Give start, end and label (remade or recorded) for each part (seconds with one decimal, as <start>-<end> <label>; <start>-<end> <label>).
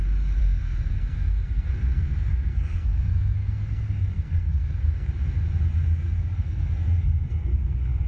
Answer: 0.0-0.4 recorded; 0.4-5.1 remade; 5.1-6.0 recorded; 6.0-8.1 remade